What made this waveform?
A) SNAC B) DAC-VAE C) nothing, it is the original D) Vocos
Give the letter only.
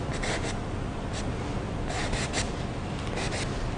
C